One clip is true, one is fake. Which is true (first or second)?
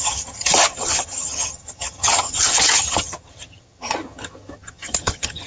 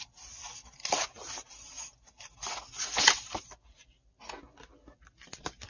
second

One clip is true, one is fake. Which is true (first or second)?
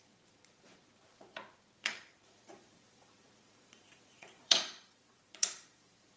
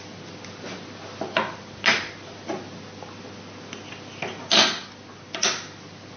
second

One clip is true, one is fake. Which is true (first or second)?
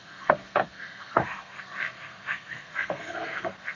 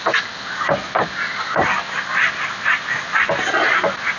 second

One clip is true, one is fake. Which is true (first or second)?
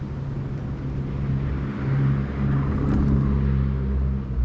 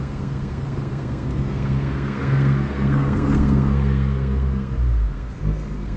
first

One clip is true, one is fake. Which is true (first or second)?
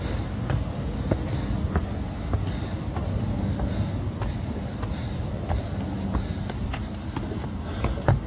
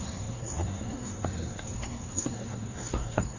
first